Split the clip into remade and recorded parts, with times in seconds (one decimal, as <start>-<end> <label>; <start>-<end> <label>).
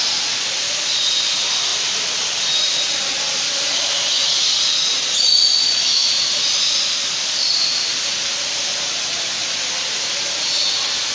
0.0-11.1 recorded